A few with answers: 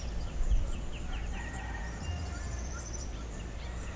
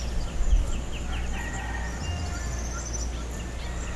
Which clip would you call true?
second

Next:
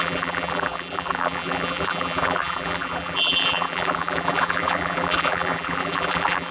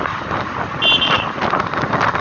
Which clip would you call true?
second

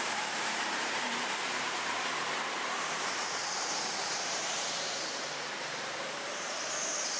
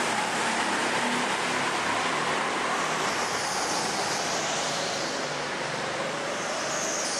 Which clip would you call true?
second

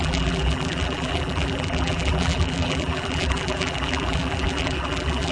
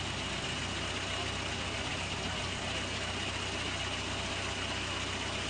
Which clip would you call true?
second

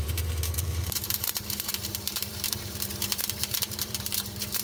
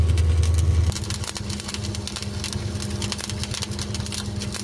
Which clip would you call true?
second